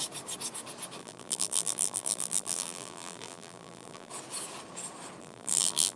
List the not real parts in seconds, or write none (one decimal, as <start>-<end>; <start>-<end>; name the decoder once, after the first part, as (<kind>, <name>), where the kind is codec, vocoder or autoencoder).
1.0-4.1 (vocoder, BigVGAN v2); 5.2-6.0